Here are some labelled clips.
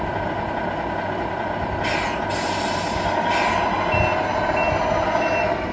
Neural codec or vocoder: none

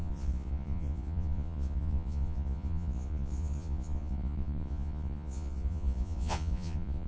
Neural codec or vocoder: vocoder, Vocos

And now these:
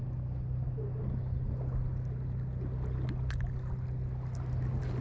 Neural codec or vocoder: none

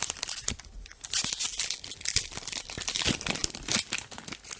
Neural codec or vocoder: none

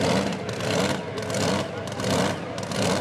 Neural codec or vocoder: none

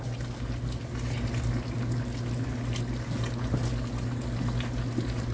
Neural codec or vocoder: none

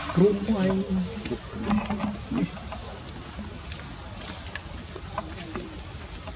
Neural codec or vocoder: none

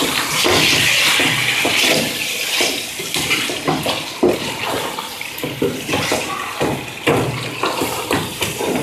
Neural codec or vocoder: none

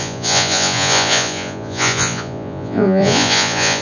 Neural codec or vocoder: vocoder, Vocos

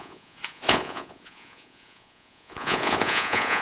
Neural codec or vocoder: vocoder, Vocos